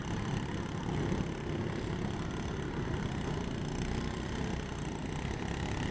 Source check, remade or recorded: recorded